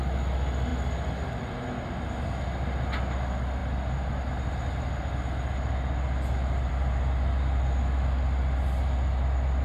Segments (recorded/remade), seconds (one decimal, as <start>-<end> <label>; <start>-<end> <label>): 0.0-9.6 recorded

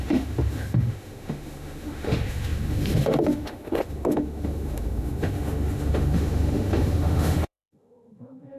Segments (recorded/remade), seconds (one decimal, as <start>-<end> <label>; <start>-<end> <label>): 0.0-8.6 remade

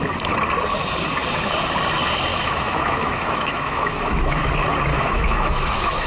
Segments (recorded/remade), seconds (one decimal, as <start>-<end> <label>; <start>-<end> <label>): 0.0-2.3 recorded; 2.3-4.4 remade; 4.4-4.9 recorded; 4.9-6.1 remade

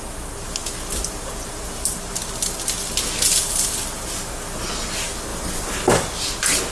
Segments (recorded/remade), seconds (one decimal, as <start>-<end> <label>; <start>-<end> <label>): 0.0-6.7 recorded